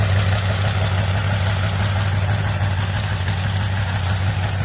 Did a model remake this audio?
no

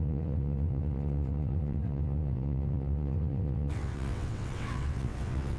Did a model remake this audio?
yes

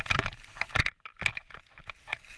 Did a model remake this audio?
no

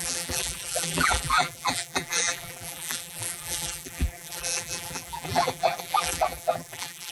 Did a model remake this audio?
yes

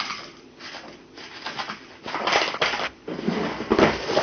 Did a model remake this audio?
no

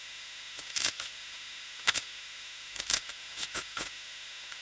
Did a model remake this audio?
yes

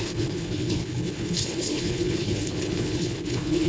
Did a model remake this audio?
yes